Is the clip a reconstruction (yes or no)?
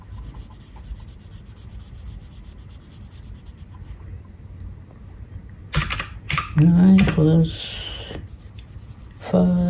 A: no